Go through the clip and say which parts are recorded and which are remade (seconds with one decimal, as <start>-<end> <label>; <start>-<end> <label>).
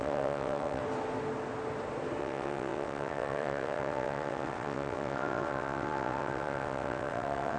0.0-0.8 remade; 0.8-2.2 recorded; 2.2-7.6 remade